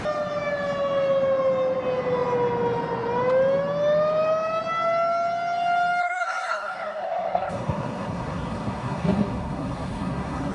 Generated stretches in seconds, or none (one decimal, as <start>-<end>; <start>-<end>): 6.0-10.5